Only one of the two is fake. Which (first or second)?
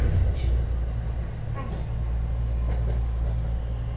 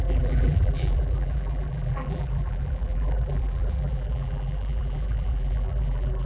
second